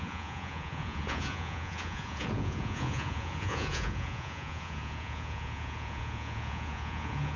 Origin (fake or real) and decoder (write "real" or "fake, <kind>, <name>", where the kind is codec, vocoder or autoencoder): fake, vocoder, Vocos